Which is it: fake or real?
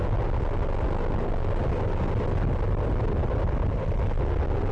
real